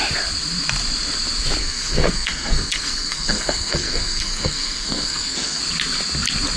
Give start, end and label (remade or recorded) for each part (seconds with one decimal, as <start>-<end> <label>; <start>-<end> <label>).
0.0-1.6 recorded; 1.6-5.6 remade; 5.6-6.6 recorded